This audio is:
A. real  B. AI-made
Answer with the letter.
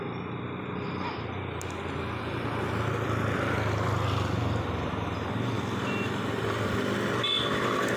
A